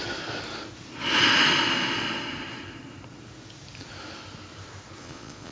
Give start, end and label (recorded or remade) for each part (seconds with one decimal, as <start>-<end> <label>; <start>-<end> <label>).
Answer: 0.0-5.0 recorded; 5.0-5.5 remade

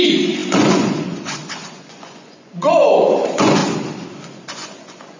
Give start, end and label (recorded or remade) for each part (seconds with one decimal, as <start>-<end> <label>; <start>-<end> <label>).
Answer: 0.0-3.6 remade; 3.6-4.1 recorded; 4.1-5.2 remade

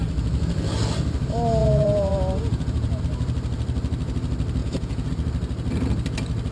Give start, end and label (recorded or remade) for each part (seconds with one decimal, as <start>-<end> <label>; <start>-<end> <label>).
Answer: 0.0-1.6 recorded; 1.6-3.0 remade; 3.0-4.6 recorded; 4.6-5.1 remade; 5.1-6.5 recorded

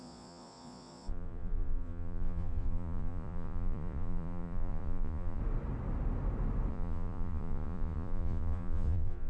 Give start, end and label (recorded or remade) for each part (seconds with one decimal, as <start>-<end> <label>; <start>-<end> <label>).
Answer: 0.0-5.4 remade; 5.4-6.7 recorded; 6.7-9.3 remade

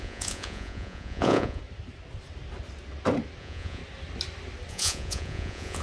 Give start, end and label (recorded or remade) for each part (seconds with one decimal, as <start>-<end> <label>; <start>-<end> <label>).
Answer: 0.0-1.6 remade; 1.6-3.4 recorded; 3.4-3.8 remade; 3.8-4.7 recorded; 4.7-5.8 remade